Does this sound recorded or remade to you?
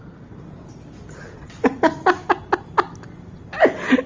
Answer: recorded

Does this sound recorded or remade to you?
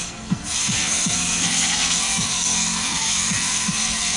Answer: remade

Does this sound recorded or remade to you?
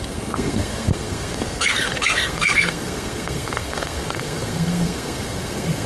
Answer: remade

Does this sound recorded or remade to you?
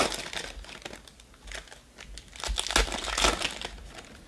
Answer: recorded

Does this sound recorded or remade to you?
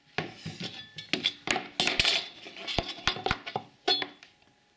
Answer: recorded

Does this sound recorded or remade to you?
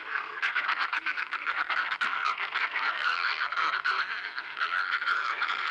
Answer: remade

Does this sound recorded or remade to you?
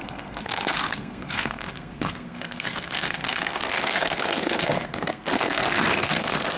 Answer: remade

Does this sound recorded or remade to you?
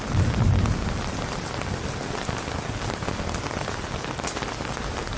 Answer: recorded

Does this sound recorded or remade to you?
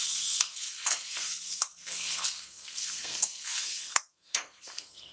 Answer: remade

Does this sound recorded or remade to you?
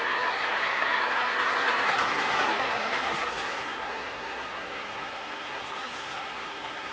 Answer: remade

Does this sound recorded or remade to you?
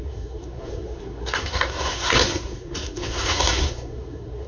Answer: remade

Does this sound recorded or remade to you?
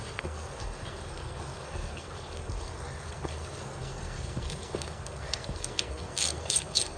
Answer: remade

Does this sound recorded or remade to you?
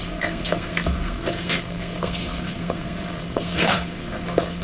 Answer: remade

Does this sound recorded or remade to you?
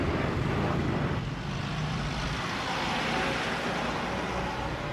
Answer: recorded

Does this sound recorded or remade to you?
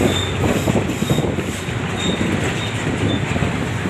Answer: recorded